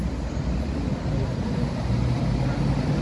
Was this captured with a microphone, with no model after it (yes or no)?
yes